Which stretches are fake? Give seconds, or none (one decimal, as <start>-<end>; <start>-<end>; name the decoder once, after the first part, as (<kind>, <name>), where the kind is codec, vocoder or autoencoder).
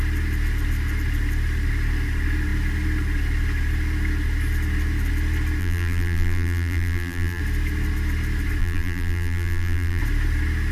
5.6-7.4 (vocoder, BigVGAN v2); 8.6-10.0